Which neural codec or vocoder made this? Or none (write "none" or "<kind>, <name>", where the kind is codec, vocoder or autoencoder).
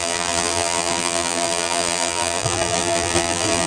vocoder, BigVGAN v2